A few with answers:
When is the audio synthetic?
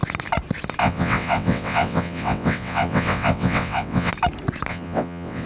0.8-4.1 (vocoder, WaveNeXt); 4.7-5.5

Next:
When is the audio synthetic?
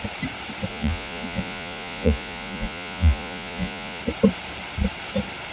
0.7-4.0 (vocoder, Vocos)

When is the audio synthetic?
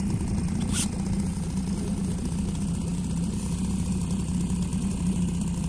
none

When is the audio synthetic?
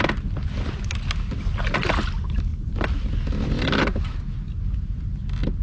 none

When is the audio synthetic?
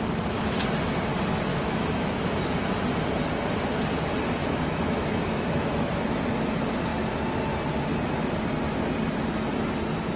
1.5-2.2 (autoencoder, DAC-VAE); 4.4-5.9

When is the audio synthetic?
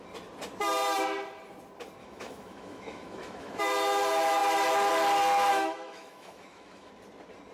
2.0-3.6 (autoencoder, DAC-VAE); 5.5-6.9